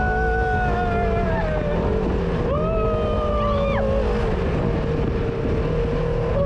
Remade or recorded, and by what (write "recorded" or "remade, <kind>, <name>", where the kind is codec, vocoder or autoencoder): recorded